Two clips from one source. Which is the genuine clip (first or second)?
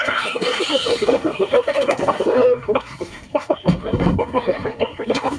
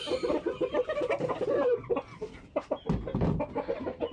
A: second